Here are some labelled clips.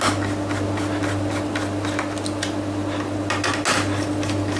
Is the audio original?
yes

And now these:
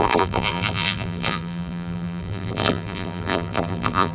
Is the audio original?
no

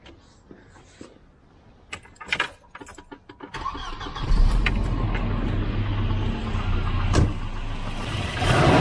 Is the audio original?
yes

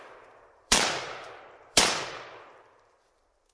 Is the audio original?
no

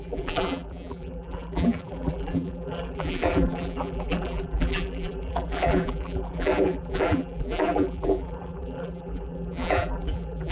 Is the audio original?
no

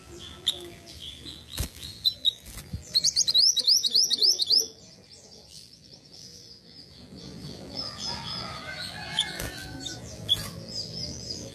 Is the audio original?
no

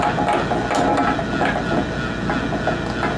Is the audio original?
yes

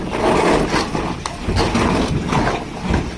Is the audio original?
yes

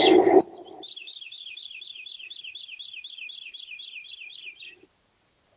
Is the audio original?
yes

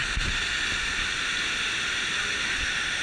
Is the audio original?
yes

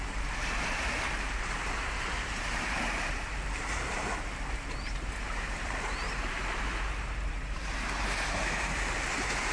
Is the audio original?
no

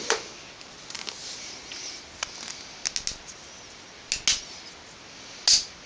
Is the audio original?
yes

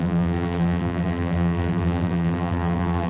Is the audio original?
no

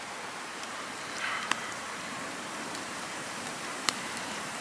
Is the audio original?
no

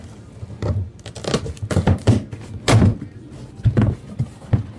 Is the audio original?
yes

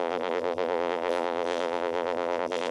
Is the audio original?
no